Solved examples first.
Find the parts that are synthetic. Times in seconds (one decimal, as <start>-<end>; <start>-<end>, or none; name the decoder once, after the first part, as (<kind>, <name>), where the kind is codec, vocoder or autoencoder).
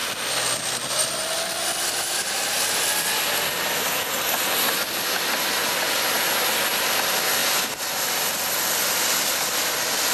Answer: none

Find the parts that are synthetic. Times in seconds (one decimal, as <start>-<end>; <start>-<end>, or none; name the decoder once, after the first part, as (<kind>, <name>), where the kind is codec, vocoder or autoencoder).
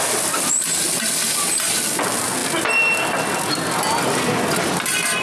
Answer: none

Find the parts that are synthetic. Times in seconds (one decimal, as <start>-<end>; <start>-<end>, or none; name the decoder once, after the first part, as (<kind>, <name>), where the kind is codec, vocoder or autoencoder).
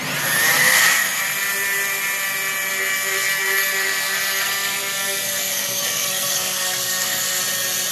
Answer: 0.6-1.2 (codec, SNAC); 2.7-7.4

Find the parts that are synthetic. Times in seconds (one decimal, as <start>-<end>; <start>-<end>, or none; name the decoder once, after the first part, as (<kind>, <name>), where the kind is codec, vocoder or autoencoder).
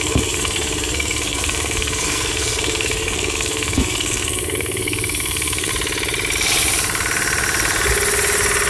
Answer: 0.0-5.7 (codec, SNAC)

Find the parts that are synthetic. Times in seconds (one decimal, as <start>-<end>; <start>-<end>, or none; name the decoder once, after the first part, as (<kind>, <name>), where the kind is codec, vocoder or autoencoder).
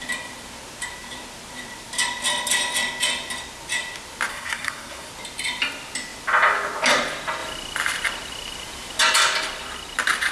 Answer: 4.3-5.1 (codec, SNAC)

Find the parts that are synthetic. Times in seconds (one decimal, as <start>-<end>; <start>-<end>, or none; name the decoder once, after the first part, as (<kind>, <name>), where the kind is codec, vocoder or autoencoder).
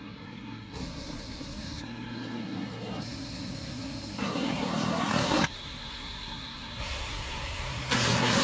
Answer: 0.0-8.4 (codec, SNAC)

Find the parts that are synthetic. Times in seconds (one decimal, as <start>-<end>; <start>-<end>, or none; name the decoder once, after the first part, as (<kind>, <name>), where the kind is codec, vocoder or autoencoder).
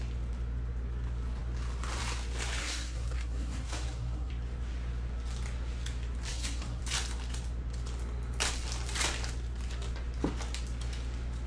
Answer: 2.6-4.3 (codec, SNAC); 6.3-6.8